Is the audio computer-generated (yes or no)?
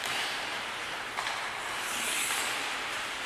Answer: yes